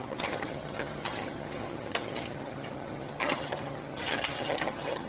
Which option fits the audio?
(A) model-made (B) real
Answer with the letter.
A